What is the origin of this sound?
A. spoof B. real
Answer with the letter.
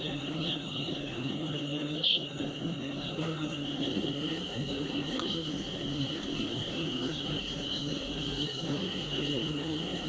A